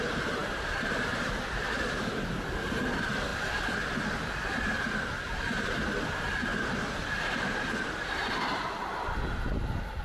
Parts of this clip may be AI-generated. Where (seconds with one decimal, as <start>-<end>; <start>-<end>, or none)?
0.0-3.3; 4.5-6.5; 7.1-10.0